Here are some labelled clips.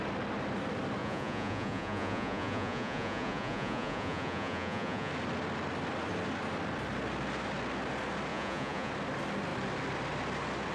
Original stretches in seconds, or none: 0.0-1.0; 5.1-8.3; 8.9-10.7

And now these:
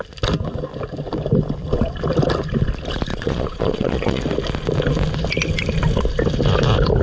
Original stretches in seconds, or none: 0.0-3.1; 4.2-7.0